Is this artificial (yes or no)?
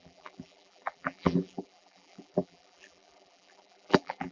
yes